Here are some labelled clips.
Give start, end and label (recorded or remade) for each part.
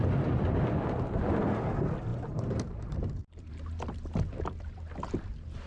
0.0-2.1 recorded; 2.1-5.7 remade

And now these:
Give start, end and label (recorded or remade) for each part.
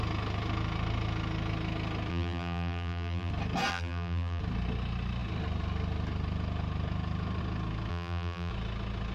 0.0-2.1 recorded; 2.1-3.3 remade; 3.3-3.7 recorded; 3.7-4.4 remade; 4.4-7.9 recorded; 7.9-8.5 remade; 8.5-9.1 recorded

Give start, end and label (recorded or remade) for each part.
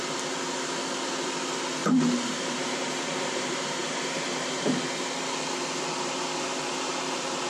0.0-1.8 recorded; 1.8-4.7 remade; 4.7-7.5 recorded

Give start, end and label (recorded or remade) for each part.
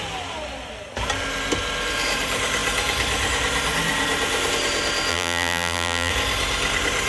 0.0-5.1 recorded; 5.1-6.1 remade; 6.1-7.1 recorded